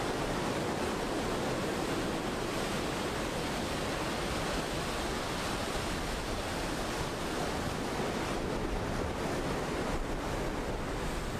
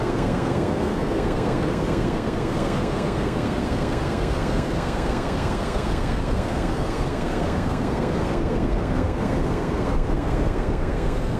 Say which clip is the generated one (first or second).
second